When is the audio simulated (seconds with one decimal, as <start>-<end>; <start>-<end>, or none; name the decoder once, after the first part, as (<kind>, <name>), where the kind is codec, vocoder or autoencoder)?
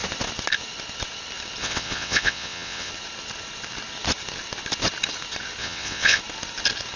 1.6-2.9 (vocoder, WaveNeXt); 5.6-6.2